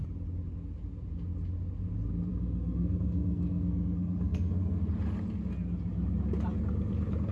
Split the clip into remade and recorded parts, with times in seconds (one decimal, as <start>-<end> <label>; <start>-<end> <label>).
0.0-2.3 recorded; 2.3-4.8 remade; 4.8-7.3 recorded